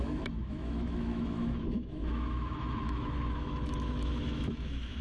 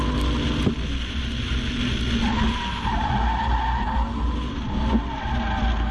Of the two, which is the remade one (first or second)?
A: first